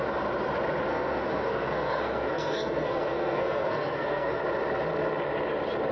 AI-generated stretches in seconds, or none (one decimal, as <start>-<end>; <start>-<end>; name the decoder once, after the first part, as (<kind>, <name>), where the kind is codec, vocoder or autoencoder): 0.9-4.4 (codec, SNAC)